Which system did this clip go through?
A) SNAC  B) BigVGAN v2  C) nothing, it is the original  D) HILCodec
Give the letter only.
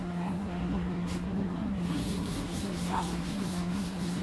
A